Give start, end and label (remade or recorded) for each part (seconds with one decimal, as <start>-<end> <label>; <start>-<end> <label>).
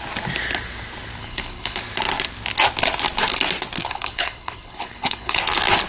0.0-1.2 recorded; 1.2-1.8 remade; 1.8-3.8 recorded; 3.8-5.4 remade; 5.4-5.9 recorded